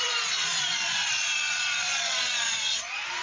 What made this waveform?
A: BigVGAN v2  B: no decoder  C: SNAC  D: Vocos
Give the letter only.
D